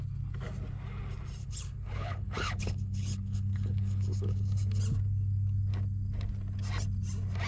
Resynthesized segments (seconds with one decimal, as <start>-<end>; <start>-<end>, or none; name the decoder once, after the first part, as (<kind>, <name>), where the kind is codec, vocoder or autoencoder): 1.4-4.8 (codec, HILCodec)